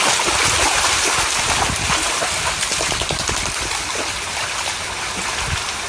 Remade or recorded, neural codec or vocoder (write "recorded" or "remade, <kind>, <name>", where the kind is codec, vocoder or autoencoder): recorded